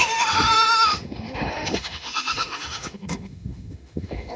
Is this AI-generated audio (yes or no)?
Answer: yes